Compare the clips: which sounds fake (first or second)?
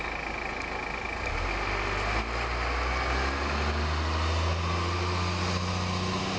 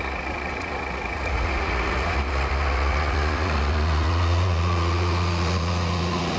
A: second